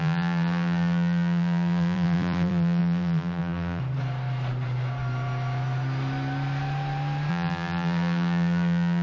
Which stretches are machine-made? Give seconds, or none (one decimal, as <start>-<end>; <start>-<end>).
0.0-3.8; 7.3-9.0